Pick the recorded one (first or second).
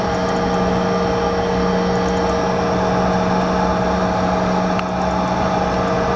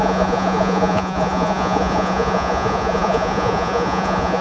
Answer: first